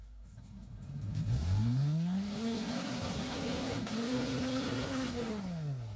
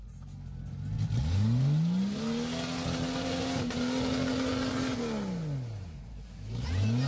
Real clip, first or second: second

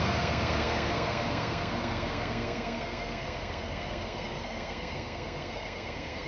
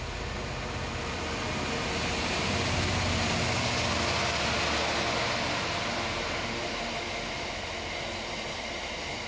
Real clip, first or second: second